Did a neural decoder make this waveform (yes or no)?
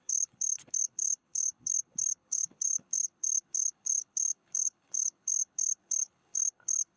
yes